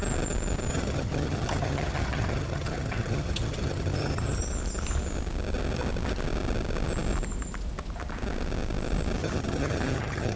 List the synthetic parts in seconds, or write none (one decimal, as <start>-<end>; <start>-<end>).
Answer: 0.7-4.4; 9.2-10.4